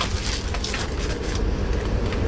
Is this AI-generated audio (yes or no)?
no